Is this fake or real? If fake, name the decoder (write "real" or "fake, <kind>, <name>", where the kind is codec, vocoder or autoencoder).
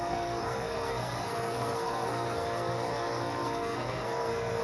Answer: fake, codec, SNAC